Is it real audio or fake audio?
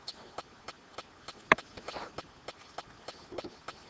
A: real